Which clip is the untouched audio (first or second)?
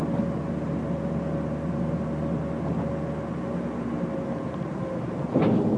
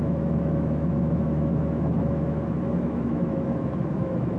first